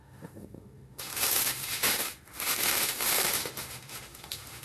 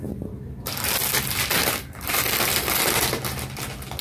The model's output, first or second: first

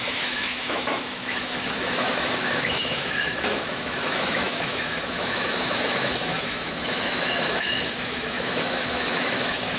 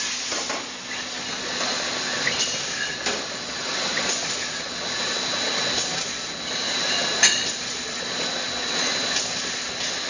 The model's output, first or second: first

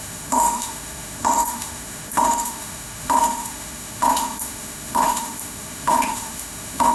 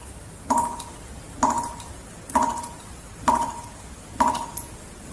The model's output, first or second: first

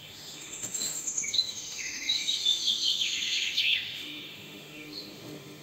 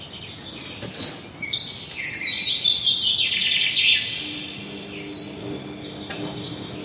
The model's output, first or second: first